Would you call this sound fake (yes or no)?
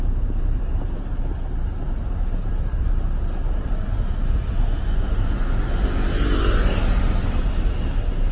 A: no